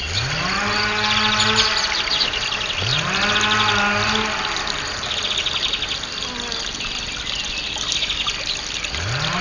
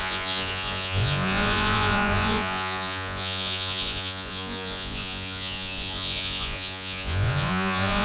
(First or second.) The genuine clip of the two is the first